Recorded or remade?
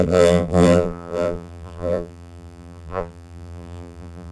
remade